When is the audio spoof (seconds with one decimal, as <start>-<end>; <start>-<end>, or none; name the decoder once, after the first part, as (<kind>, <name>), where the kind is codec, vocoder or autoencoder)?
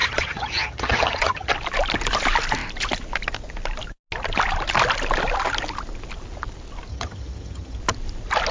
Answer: 0.0-1.5 (vocoder, HiFi-GAN); 6.9-7.8